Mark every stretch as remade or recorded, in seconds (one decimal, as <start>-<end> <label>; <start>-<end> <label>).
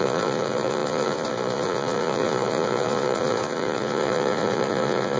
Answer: 0.0-5.2 remade